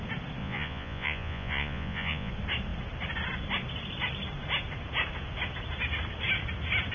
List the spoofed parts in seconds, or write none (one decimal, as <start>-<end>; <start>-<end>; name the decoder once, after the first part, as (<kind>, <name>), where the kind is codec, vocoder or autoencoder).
0.4-2.3 (vocoder, Vocos)